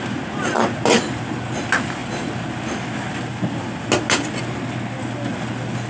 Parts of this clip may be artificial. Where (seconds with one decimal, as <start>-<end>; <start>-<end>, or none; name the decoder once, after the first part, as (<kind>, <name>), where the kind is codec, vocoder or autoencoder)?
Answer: none